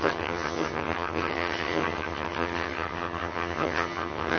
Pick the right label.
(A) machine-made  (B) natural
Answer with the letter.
A